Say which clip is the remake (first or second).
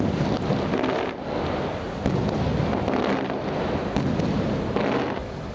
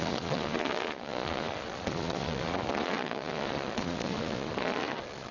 second